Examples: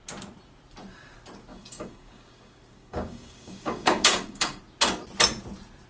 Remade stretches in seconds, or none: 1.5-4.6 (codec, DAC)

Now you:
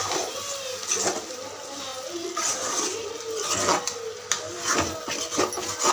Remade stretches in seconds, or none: none

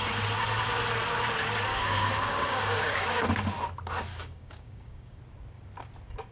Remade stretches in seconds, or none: 1.7-3.3 (codec, DAC); 4.1-5.2

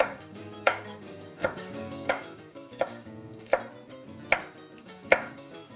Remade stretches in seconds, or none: 0.0-3.5 (codec, DAC); 4.8-5.8

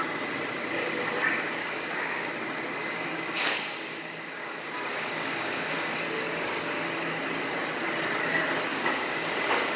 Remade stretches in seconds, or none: 1.6-2.3 (codec, DAC); 2.8-6.8; 8.7-9.8

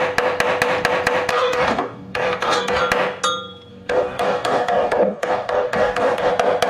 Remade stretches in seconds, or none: 1.3-2.8 (codec, DAC); 3.7-6.3

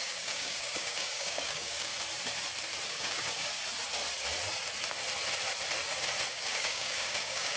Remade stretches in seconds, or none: 0.0-1.9 (codec, DAC); 2.9-3.5; 6.3-7.6

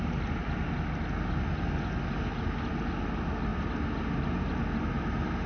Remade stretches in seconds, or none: none